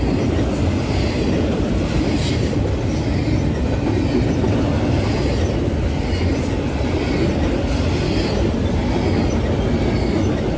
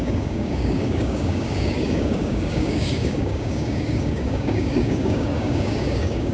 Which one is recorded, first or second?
first